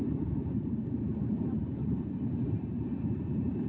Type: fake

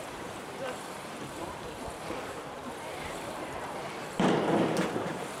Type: fake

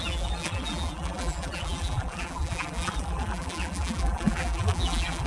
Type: fake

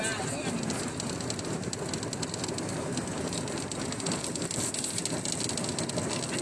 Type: real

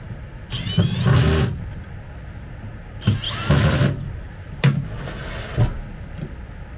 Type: real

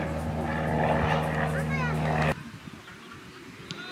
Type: real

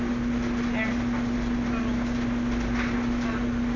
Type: real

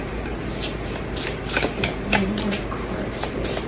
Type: fake